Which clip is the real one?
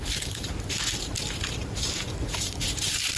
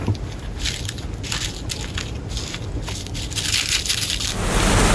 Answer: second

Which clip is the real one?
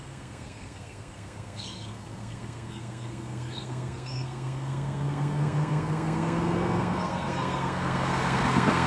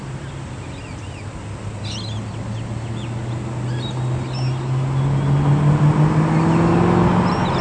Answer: second